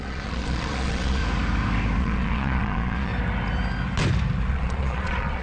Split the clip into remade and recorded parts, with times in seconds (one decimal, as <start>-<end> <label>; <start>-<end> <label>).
0.0-1.2 remade; 1.2-2.0 recorded; 2.0-3.1 remade; 3.1-4.5 recorded; 4.5-5.4 remade